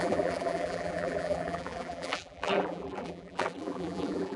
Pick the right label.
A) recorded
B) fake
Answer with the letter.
B